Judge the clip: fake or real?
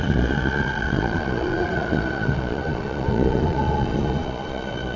fake